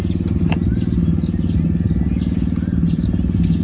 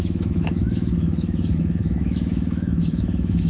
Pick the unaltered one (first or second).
first